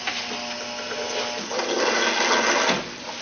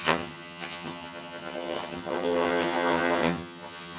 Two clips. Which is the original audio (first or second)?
first